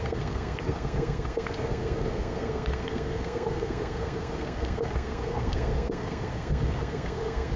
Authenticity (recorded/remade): remade